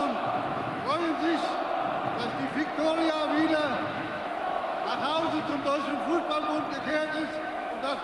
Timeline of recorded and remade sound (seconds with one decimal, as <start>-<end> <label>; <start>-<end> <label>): 0.0-1.4 remade; 1.4-3.8 recorded; 3.8-5.9 remade; 5.9-6.9 recorded; 6.9-8.0 remade